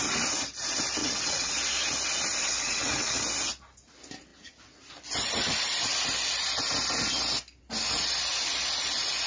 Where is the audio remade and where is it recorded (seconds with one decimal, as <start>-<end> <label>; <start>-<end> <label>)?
0.0-1.0 recorded; 1.0-1.5 remade; 1.5-2.4 recorded; 2.4-3.2 remade; 3.2-9.3 recorded